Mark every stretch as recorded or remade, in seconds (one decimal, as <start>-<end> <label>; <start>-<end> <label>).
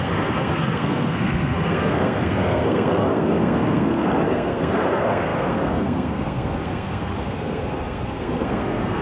0.0-9.0 remade